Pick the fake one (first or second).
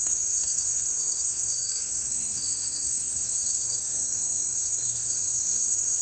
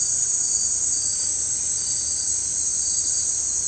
first